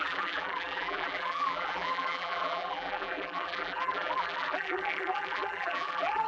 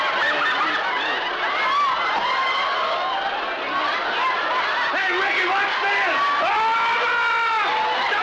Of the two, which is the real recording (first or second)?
second